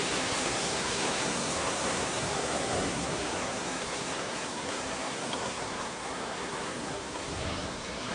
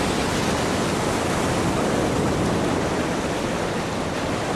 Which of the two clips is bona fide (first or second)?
second